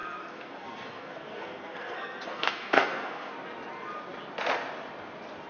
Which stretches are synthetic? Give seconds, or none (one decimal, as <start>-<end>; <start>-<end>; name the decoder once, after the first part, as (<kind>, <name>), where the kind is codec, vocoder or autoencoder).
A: 0.0-3.3 (codec, SNAC)